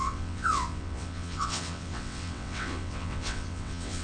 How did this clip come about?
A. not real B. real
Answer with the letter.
A